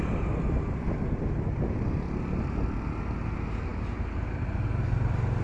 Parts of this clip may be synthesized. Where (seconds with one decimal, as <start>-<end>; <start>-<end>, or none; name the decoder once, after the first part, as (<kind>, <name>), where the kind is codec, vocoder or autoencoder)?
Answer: none